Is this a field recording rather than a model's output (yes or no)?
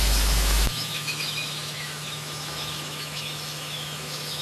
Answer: no